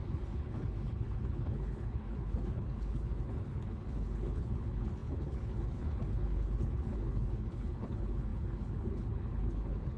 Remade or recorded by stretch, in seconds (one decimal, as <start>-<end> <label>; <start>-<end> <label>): 0.0-10.0 remade